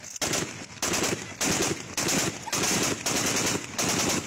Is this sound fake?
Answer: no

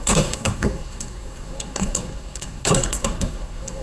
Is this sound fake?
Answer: yes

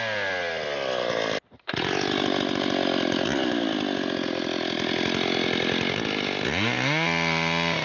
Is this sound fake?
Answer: no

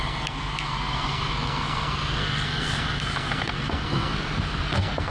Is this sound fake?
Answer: yes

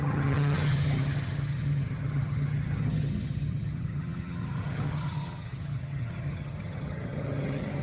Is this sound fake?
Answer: yes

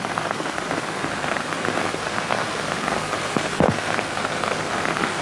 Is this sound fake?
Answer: yes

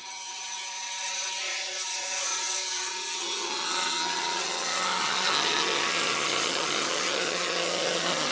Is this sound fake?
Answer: yes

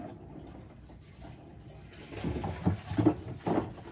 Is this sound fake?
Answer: no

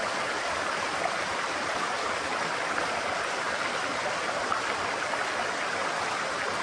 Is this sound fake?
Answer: no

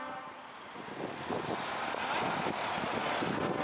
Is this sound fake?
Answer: no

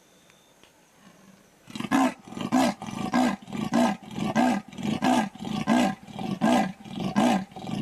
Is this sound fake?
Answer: no